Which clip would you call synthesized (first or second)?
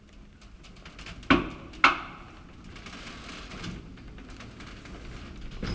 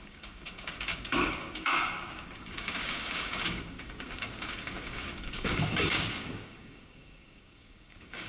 second